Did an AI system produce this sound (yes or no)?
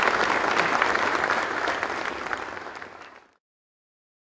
no